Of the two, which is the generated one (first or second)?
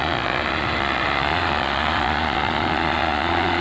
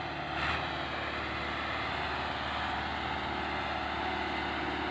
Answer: first